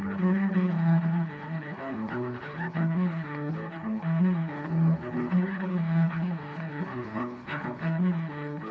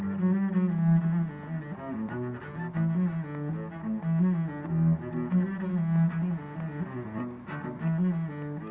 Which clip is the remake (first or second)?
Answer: first